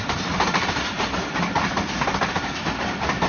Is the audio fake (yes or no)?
no